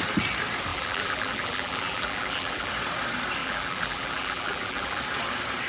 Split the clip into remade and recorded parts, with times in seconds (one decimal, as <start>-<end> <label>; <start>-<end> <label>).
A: 0.0-0.7 recorded; 0.7-2.7 remade; 2.7-3.4 recorded; 3.4-5.0 remade; 5.0-5.7 recorded